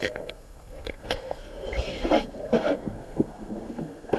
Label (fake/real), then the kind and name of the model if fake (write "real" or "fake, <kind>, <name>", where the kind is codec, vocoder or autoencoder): fake, codec, SNAC